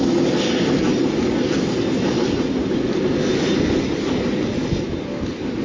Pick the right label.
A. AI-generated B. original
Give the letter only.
B